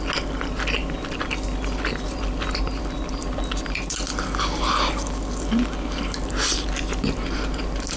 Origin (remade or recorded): recorded